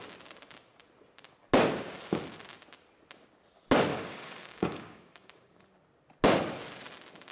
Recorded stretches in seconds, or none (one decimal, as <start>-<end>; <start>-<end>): 0.0-3.9; 5.6-7.3